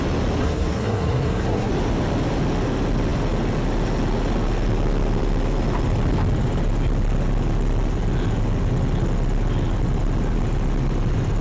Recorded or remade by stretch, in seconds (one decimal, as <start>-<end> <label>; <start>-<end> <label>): 0.0-0.4 recorded; 0.4-1.7 remade; 1.7-11.4 recorded